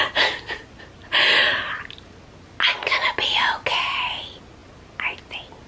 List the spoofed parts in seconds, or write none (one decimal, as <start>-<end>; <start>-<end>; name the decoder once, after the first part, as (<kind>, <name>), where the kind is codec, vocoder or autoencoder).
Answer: none